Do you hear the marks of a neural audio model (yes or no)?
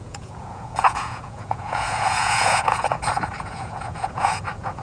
yes